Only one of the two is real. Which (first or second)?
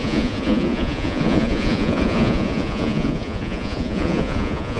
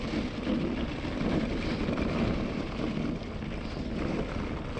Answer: second